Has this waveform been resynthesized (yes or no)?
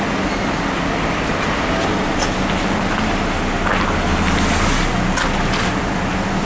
no